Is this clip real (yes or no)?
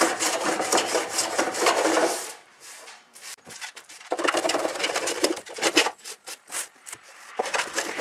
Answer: no